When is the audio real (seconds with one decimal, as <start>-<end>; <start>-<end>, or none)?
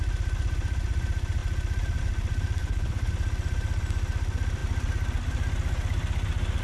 0.0-2.6; 3.1-6.6